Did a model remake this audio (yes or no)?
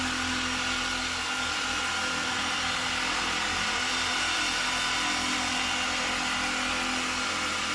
no